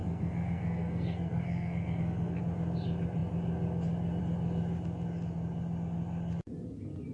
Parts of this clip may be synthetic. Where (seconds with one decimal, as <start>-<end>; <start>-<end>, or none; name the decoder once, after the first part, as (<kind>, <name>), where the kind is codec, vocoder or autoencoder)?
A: 0.0-2.4 (codec, SNAC)